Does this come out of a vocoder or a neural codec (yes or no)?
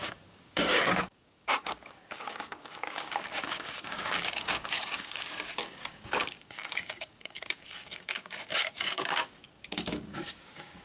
yes